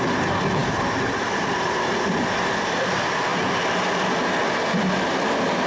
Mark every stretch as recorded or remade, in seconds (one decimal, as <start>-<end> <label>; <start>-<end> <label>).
0.0-5.7 recorded